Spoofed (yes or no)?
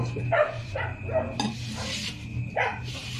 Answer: yes